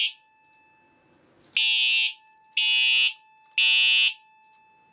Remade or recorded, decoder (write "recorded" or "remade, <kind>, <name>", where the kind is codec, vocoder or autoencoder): recorded